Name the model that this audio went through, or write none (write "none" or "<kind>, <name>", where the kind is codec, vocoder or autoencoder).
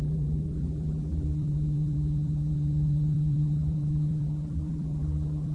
vocoder, BigVGAN v2